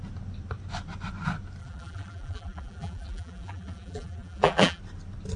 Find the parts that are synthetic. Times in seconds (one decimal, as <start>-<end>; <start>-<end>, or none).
1.6-4.8